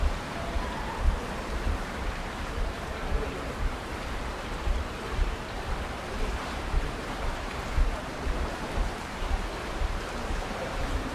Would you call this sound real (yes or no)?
no